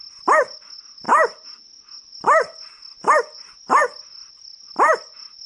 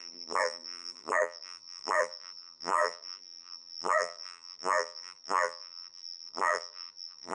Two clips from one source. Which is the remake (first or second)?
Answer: second